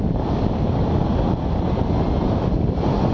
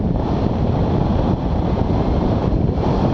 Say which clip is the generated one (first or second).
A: second